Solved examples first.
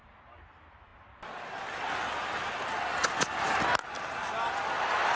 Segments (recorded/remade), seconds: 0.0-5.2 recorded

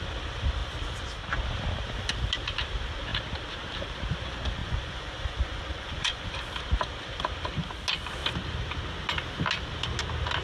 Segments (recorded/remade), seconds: 0.0-4.6 recorded; 4.6-6.3 remade; 6.3-10.4 recorded

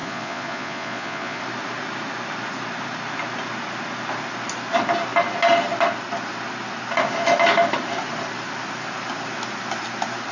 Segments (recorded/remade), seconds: 0.0-1.4 remade; 1.4-10.3 recorded

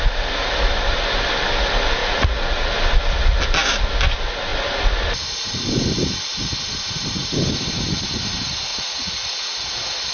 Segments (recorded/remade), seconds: 0.0-2.0 recorded; 2.0-2.7 remade; 2.7-8.7 recorded; 8.7-9.7 remade; 9.7-10.1 recorded

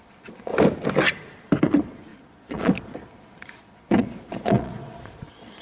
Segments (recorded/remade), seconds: 0.0-0.5 remade; 0.5-1.6 recorded; 1.6-5.6 remade